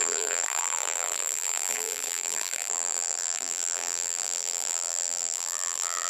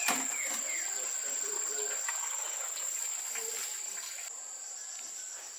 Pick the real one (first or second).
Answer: second